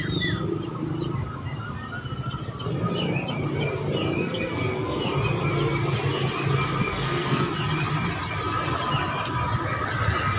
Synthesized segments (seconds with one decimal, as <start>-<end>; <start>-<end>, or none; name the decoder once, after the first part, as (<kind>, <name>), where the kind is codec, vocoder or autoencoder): 4.2-5.0 (codec, SNAC); 6.8-7.5